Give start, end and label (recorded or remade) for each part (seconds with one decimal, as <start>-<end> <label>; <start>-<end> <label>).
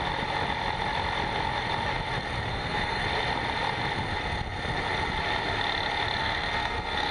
0.0-2.5 recorded; 2.5-3.0 remade; 3.0-6.2 recorded; 6.2-7.1 remade